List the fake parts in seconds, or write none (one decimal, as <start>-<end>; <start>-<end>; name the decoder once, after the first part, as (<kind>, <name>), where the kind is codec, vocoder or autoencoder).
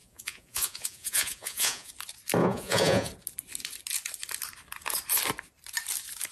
0.0-1.9 (vocoder, Vocos); 2.4-3.1